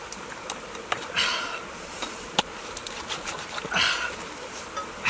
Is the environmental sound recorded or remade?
recorded